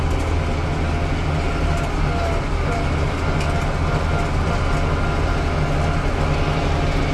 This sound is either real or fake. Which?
real